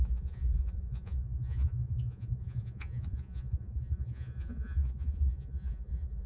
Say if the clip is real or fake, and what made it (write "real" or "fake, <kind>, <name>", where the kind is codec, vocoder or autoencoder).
fake, vocoder, Vocos